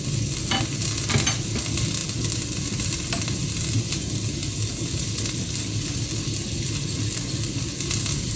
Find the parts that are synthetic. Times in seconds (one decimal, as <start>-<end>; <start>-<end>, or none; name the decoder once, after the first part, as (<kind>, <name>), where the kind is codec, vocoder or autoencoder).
none